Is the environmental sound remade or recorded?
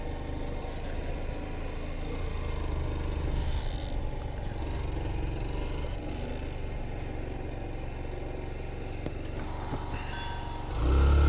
recorded